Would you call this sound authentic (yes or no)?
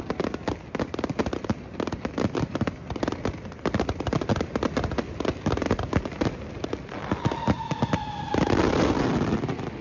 yes